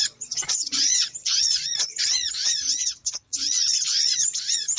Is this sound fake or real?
fake